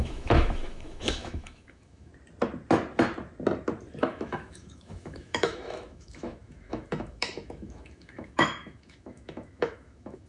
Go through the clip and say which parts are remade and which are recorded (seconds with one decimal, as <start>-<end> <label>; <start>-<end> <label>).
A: 0.0-2.1 remade; 2.1-4.0 recorded; 4.0-10.3 remade